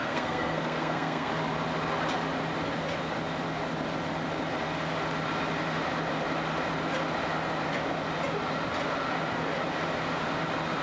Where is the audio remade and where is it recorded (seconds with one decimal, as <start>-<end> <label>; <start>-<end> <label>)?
0.0-1.3 remade; 1.3-10.8 recorded